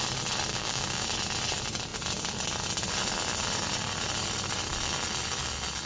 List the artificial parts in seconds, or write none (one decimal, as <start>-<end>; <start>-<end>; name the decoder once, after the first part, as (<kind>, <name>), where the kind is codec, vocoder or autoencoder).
0.5-1.1 (codec, DAC)